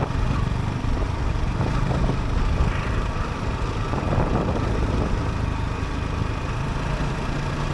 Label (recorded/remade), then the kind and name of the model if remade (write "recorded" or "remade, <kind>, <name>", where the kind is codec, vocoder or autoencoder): remade, vocoder, BigVGAN v2